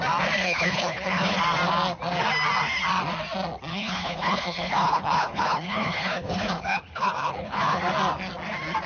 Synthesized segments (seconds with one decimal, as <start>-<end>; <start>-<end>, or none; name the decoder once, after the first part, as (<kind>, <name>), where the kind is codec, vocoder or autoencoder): 0.4-1.4 (codec, HILCodec); 3.7-7.8